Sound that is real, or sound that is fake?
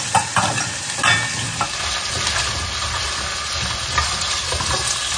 real